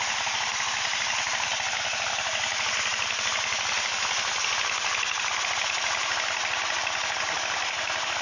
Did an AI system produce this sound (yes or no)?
no